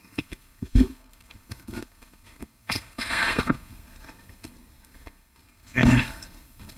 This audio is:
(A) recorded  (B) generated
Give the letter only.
B